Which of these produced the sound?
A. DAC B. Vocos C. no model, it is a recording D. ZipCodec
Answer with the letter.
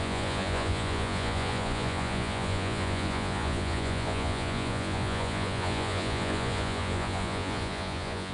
B